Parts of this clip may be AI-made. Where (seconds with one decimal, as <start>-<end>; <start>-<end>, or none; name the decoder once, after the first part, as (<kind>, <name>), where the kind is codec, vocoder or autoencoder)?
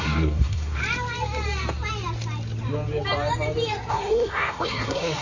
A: 0.0-0.8 (codec, SNAC); 3.9-5.2